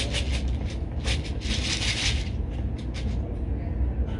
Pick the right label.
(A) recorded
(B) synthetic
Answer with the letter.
A